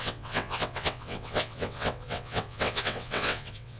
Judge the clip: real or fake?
fake